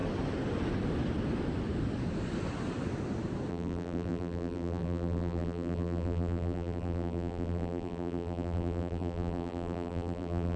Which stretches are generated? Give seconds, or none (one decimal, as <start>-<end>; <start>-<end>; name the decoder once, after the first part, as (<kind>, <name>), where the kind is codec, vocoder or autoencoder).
3.5-10.6 (vocoder, BigVGAN v2)